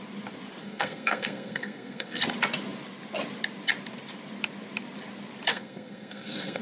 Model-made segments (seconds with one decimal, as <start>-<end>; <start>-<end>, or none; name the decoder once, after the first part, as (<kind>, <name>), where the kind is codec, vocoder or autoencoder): 0.6-2.2 (codec, SNAC); 5.5-6.6